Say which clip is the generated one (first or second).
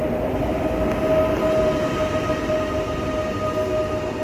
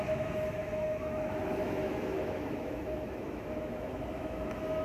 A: second